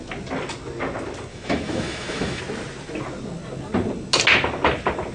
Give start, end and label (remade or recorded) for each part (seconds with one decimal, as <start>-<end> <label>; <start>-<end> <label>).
0.0-1.3 recorded; 1.3-2.4 remade; 2.4-5.1 recorded